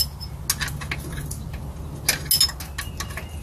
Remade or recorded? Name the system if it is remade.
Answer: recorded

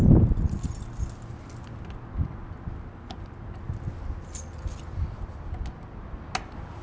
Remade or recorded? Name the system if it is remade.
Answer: recorded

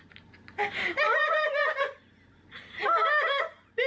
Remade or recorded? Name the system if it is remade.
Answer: recorded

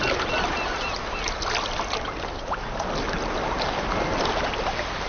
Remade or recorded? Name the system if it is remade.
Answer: recorded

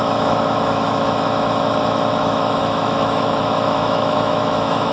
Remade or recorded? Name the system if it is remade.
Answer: remade, autoencoder, DAC-VAE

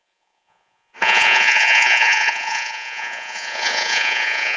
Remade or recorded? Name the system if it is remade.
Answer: remade, vocoder, Vocos